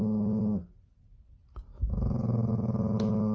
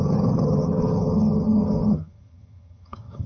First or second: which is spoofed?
second